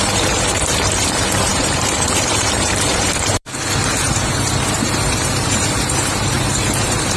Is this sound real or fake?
fake